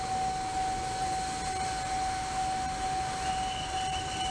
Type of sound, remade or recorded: recorded